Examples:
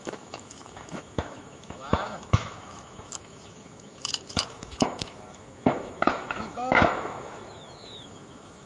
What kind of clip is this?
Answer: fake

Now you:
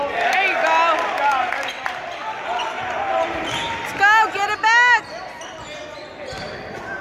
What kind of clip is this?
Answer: real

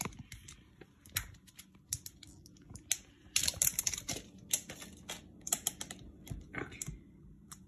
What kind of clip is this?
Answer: real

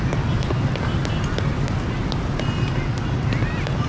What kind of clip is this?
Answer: real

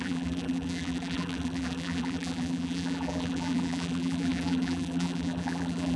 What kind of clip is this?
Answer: fake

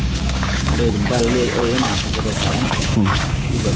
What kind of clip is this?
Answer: fake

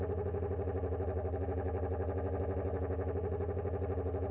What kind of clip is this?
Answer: real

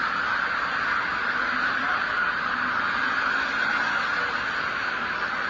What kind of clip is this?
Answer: real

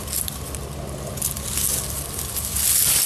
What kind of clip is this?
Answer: real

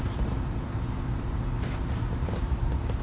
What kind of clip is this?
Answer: fake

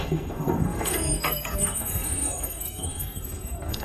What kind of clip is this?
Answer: fake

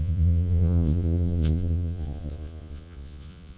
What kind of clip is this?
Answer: fake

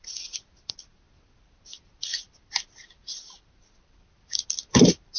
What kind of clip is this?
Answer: fake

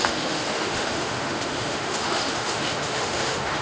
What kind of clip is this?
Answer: fake